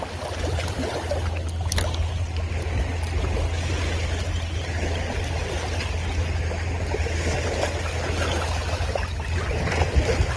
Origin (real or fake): real